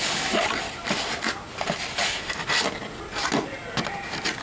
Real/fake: real